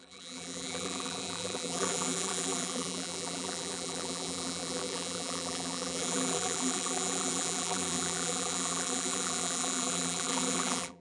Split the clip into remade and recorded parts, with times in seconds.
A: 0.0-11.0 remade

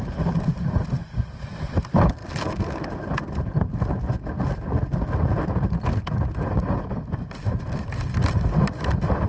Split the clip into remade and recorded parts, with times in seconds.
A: 0.0-9.3 recorded